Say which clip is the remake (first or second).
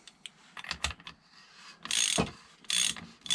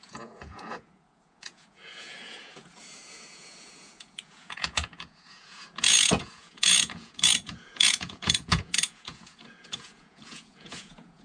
second